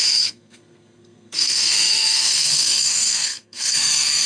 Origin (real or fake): fake